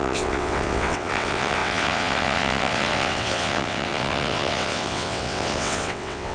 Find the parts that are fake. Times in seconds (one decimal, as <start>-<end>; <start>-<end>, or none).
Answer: 0.0-6.3